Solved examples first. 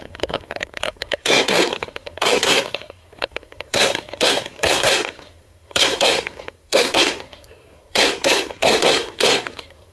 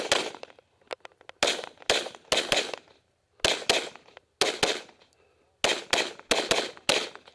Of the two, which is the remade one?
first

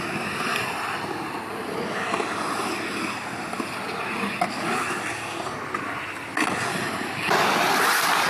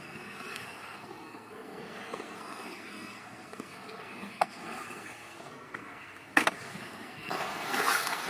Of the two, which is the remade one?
second